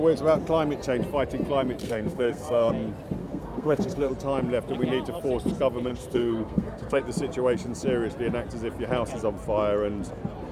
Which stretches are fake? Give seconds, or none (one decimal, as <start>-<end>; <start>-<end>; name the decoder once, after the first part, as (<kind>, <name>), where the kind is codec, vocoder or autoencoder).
1.8-2.7 (codec, SNAC); 3.2-4.1; 5.9-7.0

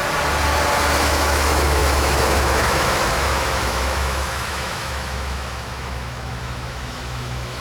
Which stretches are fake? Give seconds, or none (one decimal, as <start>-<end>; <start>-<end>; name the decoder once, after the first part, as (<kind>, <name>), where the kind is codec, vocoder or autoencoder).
1.0-7.6 (autoencoder, DAC-VAE)

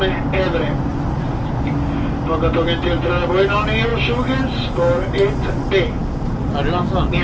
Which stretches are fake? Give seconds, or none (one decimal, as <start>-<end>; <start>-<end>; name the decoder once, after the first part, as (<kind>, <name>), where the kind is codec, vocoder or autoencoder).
0.9-1.6 (vocoder, BigVGAN v2)

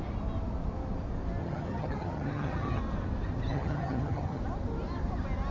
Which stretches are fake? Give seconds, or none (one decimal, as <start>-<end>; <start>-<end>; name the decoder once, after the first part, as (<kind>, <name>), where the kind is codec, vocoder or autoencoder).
1.4-2.8 (vocoder, HiFi-GAN); 3.5-4.4